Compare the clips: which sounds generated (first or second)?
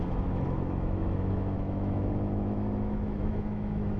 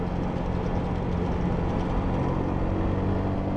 first